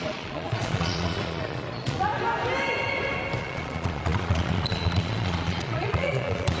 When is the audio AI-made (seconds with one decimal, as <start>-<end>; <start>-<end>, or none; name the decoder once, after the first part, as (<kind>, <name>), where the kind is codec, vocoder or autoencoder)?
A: 0.0-2.1 (vocoder, Vocos); 3.4-6.6